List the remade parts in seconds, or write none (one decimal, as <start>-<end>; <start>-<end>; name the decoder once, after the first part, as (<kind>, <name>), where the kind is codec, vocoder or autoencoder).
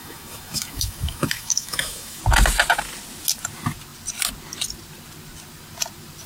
0.0-2.2 (autoencoder, DAC-VAE)